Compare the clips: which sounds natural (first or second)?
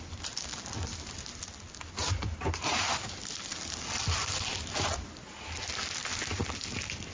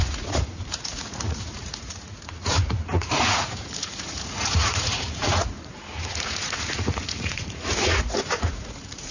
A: first